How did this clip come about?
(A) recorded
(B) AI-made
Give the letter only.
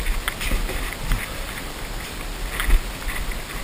A